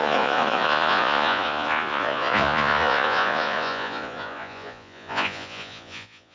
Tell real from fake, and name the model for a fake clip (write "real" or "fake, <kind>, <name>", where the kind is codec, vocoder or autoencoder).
fake, vocoder, Vocos